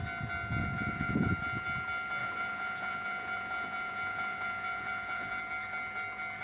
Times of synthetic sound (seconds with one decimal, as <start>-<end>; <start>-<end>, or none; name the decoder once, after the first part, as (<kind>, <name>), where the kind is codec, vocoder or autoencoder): 0.6-1.3 (vocoder, Vocos); 2.2-5.4